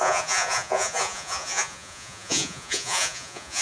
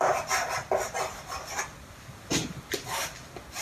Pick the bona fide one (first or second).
second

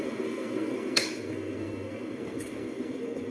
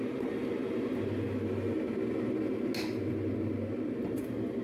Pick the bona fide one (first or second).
second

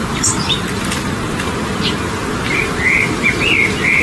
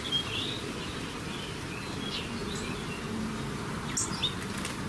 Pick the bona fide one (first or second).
second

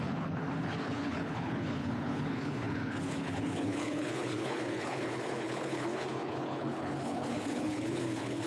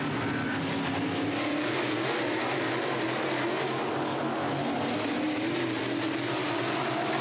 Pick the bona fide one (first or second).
second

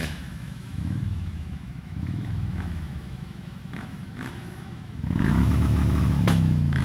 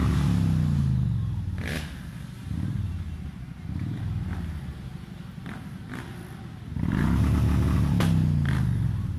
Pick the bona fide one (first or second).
second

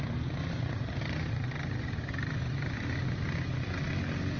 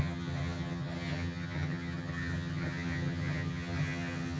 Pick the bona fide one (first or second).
first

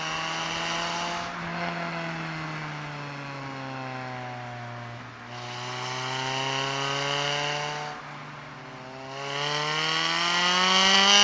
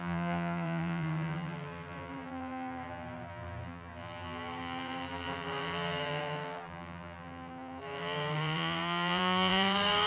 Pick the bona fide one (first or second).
first